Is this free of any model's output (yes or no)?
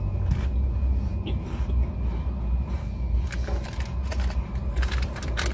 yes